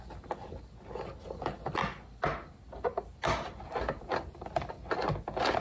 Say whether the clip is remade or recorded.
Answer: recorded